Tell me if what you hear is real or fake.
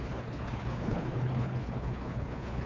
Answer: fake